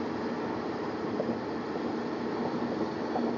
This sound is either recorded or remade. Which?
recorded